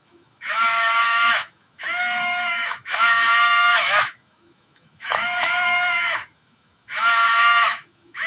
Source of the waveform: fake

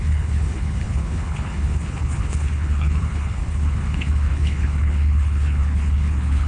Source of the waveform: fake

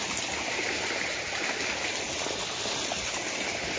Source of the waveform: real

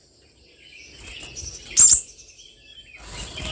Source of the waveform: real